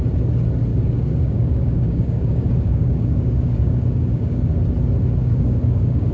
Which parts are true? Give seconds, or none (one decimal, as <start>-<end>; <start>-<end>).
0.0-0.7; 4.4-5.2

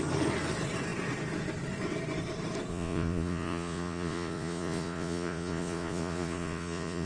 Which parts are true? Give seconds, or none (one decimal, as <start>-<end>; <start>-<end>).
0.0-2.7

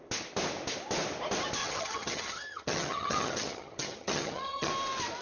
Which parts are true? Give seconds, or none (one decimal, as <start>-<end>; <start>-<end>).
0.0-1.6; 4.7-5.2

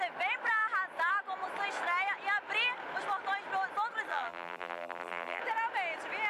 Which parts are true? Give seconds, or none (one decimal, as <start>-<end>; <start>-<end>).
0.0-4.1; 5.4-6.3

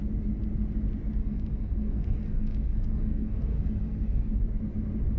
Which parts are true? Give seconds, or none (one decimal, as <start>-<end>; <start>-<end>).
0.0-1.2; 4.3-5.2

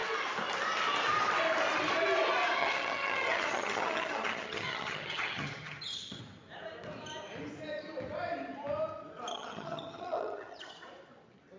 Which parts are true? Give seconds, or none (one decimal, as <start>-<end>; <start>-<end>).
0.0-2.6; 6.2-9.3; 10.7-11.6

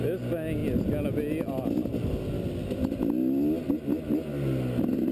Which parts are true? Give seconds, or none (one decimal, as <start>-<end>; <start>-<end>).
0.0-5.1

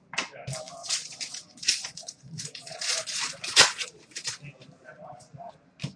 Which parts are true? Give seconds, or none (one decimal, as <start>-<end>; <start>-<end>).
0.0-0.8; 4.4-6.0